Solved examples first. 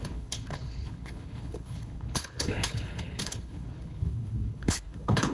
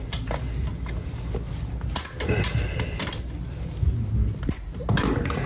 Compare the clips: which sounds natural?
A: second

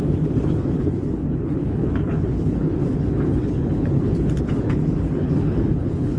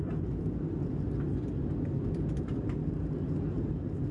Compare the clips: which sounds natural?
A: second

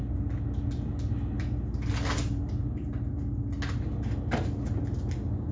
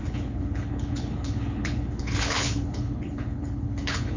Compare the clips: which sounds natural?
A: first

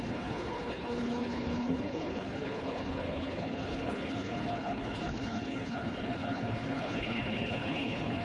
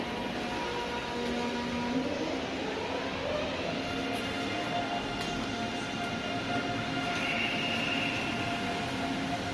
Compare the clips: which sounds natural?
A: second